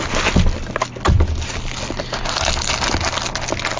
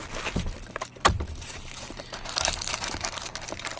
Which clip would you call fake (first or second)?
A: second